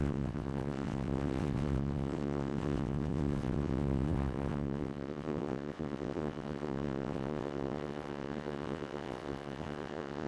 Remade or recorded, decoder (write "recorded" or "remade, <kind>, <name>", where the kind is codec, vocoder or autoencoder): remade, vocoder, WaveNeXt